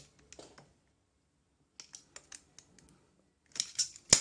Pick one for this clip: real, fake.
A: real